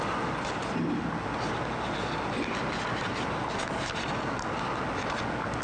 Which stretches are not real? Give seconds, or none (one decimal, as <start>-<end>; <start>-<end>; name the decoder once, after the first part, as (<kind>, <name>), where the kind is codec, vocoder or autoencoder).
none